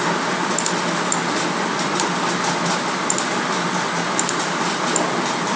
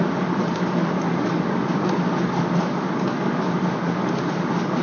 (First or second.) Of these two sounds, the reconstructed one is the second